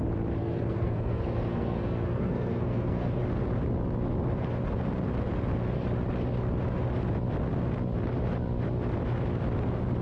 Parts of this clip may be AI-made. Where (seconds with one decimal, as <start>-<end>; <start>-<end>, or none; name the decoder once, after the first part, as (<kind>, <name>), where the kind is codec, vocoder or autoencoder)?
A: 0.4-3.2 (codec, SNAC)